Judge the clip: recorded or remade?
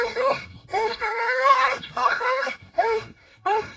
remade